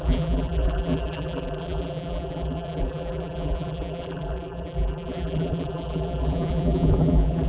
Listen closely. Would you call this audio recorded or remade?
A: remade